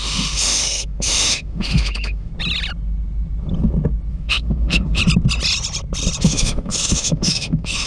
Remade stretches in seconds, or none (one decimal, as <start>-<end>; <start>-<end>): 0.0-2.3; 4.1-5.0; 6.2-7.9